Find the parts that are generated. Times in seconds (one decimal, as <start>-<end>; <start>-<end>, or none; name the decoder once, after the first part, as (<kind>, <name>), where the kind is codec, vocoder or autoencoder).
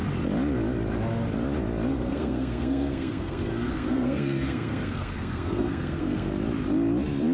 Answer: 1.9-6.3 (codec, SNAC)